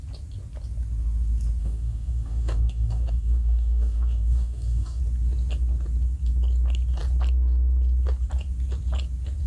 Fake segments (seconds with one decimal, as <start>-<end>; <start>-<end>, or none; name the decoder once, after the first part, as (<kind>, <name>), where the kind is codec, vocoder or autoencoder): 1.6-5.0 (codec, DAC)